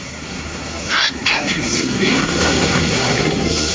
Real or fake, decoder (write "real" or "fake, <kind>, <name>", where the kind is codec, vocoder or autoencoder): fake, codec, SNAC